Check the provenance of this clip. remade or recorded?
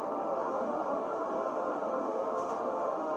remade